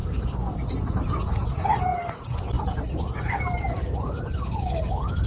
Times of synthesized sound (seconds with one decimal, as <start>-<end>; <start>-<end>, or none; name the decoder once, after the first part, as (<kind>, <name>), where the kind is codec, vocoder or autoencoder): 0.0-1.1 (vocoder, BigVGAN v2)